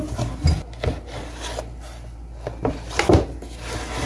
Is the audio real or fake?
real